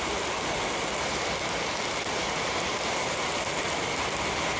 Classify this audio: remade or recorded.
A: recorded